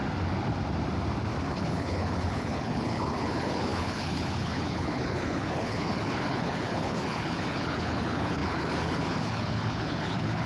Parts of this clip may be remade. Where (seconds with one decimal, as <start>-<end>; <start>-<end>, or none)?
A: 1.4-10.5